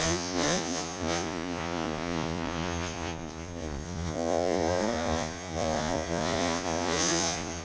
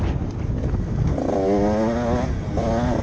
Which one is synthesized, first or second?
first